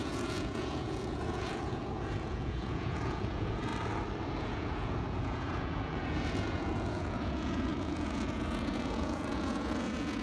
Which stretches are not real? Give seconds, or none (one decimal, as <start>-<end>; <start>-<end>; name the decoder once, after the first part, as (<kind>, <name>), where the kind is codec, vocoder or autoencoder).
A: 0.0-3.7 (vocoder, Vocos); 4.4-10.2